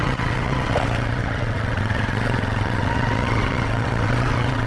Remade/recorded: remade